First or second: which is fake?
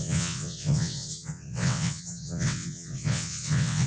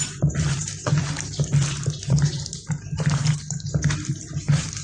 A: first